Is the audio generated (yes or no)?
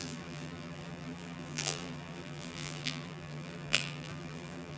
yes